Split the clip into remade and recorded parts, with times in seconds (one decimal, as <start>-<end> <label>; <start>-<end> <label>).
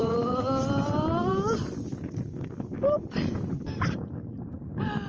0.0-0.6 remade; 0.6-5.1 recorded